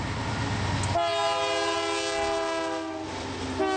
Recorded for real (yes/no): yes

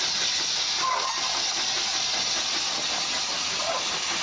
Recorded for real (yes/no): yes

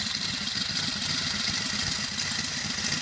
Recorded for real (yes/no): yes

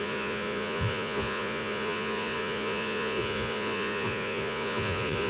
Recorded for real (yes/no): no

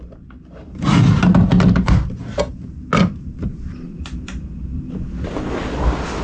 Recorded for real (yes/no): yes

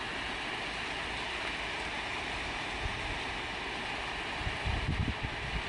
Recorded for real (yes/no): yes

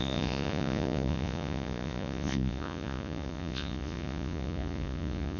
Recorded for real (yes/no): no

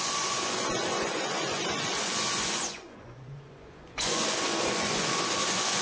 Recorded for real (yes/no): no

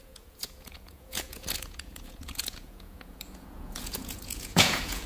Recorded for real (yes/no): no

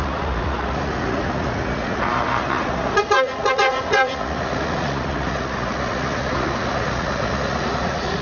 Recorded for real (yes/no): no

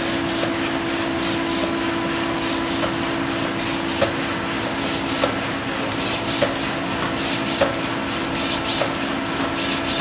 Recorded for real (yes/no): yes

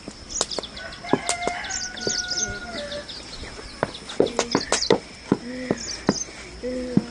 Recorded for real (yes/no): yes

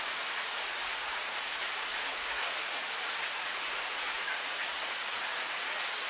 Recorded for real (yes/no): no